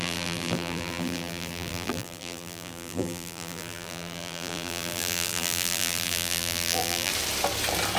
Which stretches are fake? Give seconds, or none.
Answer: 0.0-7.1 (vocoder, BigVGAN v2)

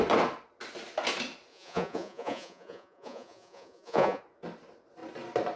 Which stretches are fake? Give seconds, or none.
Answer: 1.5-4.2 (vocoder, Vocos)

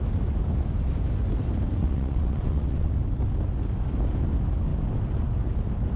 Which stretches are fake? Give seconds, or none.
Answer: 1.8-2.9 (vocoder, WaveNeXt)

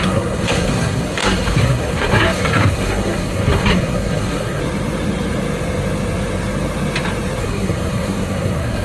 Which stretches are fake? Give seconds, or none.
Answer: 0.0-4.6 (codec, SNAC); 7.4-8.8

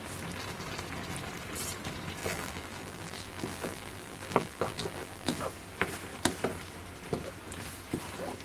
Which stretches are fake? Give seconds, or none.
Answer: 2.2-5.4 (vocoder, BigVGAN v2)

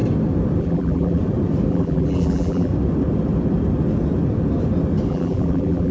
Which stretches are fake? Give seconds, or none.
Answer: 0.6-1.2 (vocoder, BigVGAN v2); 1.7-2.7; 5.1-5.9

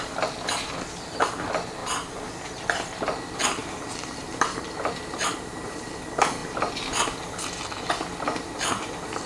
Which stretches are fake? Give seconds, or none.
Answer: 3.6-5.9 (vocoder, BigVGAN v2)